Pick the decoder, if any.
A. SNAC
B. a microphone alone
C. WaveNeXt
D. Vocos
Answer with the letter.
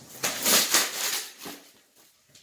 B